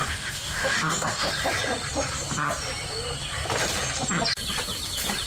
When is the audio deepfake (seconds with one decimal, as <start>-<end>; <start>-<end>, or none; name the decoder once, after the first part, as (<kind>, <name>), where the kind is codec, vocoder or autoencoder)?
0.0-1.3 (codec, DAC)